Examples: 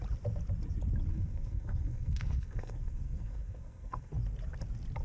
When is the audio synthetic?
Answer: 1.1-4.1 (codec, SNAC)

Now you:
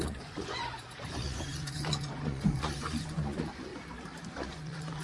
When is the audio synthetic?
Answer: 0.0-3.7 (vocoder, Vocos); 4.3-5.0

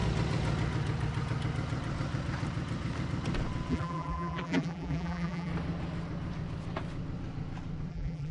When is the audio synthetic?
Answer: 3.7-5.5 (vocoder, BigVGAN v2); 7.9-8.3

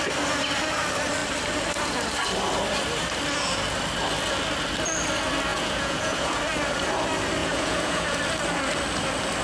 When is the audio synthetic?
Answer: 5.5-6.4 (vocoder, Vocos); 7.4-8.2